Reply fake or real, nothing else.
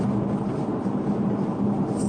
real